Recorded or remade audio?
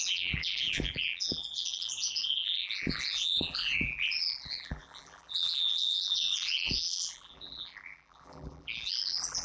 remade